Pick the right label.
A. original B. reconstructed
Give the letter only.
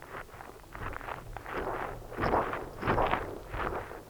A